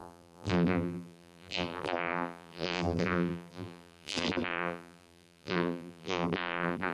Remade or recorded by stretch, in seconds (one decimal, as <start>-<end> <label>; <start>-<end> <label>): 0.0-6.9 remade